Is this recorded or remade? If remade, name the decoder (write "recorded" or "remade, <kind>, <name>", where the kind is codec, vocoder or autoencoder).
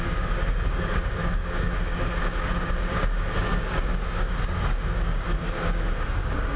remade, codec, DAC